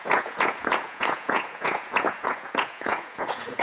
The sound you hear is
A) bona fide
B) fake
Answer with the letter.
B